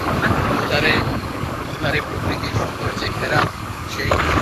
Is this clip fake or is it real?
fake